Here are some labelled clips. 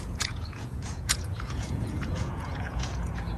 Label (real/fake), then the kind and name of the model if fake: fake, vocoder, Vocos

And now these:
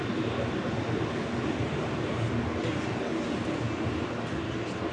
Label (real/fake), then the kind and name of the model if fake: real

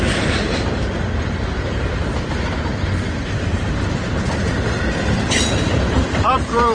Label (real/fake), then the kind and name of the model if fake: fake, vocoder, BigVGAN v2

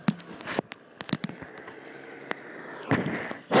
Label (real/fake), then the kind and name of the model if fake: real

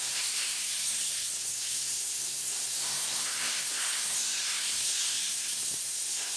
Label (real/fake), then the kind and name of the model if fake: fake, codec, SNAC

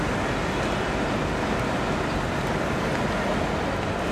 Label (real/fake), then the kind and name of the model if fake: real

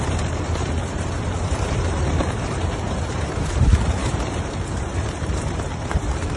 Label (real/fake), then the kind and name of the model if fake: fake, vocoder, BigVGAN v2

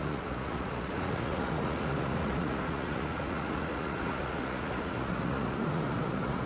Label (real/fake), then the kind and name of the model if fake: fake, vocoder, Vocos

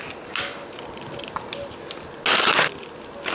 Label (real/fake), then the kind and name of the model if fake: real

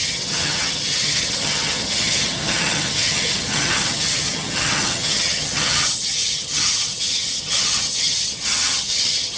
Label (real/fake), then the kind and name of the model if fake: fake, vocoder, HiFi-GAN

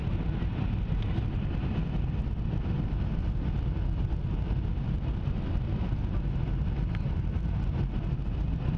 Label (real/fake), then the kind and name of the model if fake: real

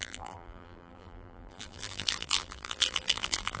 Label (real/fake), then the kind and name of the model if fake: fake, vocoder, BigVGAN v2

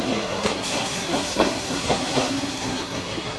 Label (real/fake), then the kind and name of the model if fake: fake, codec, SNAC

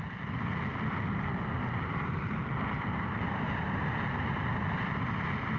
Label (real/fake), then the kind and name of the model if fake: real